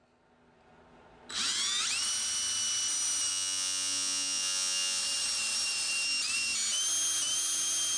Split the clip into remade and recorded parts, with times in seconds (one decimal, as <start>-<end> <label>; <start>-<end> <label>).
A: 0.0-3.3 recorded; 3.3-5.0 remade; 5.0-8.0 recorded